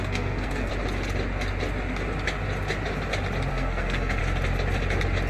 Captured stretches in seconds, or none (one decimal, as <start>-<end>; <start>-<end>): 0.7-3.5; 4.2-5.3